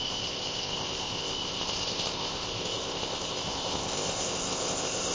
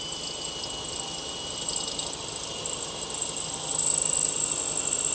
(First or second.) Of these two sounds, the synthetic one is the first